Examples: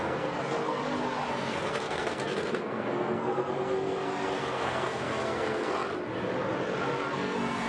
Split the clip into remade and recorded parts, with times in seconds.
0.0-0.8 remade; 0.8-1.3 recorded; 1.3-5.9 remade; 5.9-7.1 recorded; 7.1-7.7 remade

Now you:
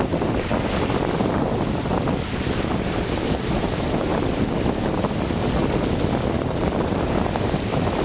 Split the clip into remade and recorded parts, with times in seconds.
0.0-0.5 remade; 0.5-2.7 recorded; 2.7-4.1 remade; 4.1-6.4 recorded; 6.4-8.0 remade

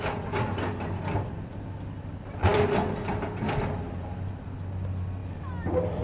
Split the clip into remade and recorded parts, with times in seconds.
0.0-6.0 recorded

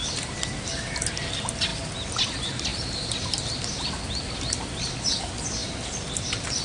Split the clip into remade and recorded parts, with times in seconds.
0.0-6.6 recorded

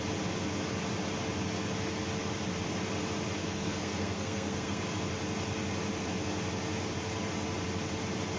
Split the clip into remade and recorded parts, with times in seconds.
0.0-3.4 recorded; 3.4-4.8 remade; 4.8-8.4 recorded

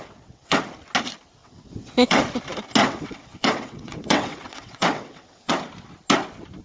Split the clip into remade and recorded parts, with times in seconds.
0.0-0.6 remade; 0.6-1.4 recorded; 1.4-2.2 remade; 2.2-2.8 recorded; 2.8-5.5 remade; 5.5-6.6 recorded

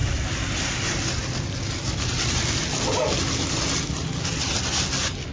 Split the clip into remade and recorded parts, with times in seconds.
0.0-5.3 recorded

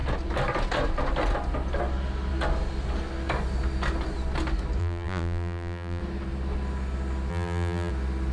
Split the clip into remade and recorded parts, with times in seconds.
0.0-4.8 recorded; 4.8-6.0 remade; 6.0-7.3 recorded; 7.3-7.9 remade; 7.9-8.3 recorded